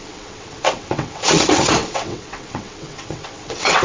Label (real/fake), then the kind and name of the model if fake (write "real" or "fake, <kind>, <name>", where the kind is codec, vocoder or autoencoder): fake, vocoder, WaveNeXt